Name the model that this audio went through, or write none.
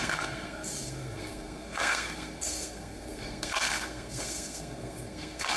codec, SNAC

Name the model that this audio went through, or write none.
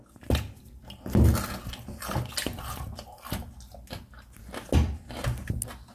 none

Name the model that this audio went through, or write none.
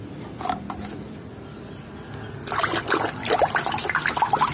none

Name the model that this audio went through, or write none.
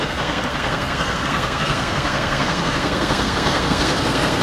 codec, SNAC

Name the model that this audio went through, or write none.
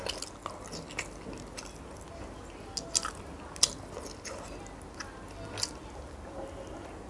none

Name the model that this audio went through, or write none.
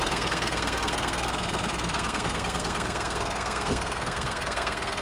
codec, SNAC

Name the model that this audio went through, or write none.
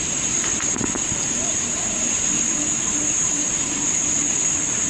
none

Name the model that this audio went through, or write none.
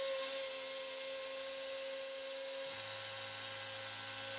none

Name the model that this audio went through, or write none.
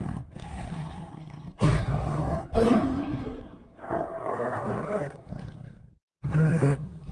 codec, SNAC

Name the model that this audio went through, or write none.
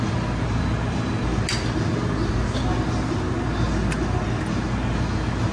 none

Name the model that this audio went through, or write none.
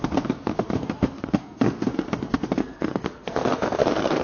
codec, SNAC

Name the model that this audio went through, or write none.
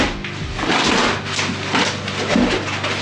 none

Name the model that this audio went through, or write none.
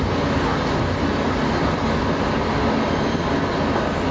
none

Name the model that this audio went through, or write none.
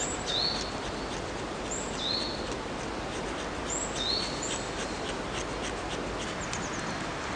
none